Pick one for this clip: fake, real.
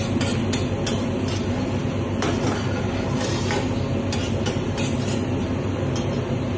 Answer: real